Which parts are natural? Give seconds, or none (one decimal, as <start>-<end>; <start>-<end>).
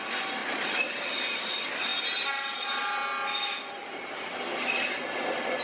0.0-0.4; 1.1-5.6